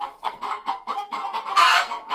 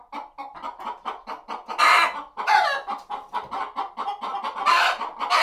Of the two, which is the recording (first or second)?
second